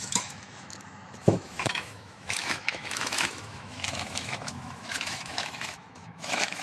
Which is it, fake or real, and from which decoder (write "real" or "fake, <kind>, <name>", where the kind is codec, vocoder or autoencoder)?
fake, autoencoder, DAC-VAE